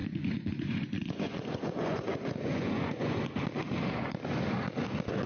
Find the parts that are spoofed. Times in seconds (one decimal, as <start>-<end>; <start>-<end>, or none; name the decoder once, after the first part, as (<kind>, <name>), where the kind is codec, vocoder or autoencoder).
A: 0.0-3.2 (vocoder, Vocos)